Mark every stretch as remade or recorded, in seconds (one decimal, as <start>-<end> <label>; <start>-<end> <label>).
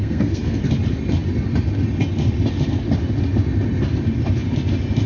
0.0-0.6 remade; 0.6-5.1 recorded